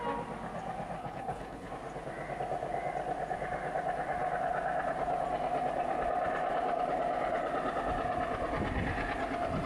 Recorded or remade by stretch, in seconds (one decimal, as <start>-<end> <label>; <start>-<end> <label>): 0.0-1.0 recorded; 1.0-1.7 remade; 1.7-9.7 recorded